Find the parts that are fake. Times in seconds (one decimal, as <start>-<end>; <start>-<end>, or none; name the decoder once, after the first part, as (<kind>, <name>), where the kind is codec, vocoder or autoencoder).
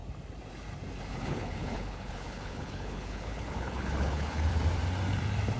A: 1.1-4.5 (codec, HILCodec)